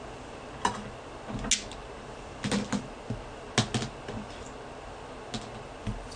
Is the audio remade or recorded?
recorded